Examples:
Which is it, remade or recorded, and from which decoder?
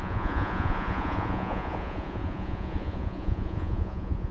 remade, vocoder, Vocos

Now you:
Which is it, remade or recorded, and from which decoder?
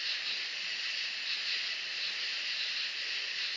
recorded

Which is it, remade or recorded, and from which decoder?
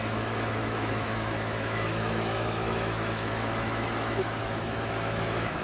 remade, autoencoder, DAC-VAE